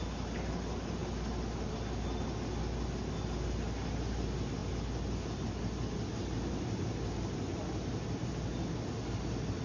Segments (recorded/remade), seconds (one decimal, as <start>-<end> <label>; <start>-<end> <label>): 0.0-9.6 recorded